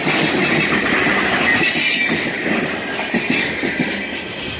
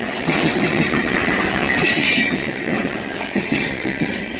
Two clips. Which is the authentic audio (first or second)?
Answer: first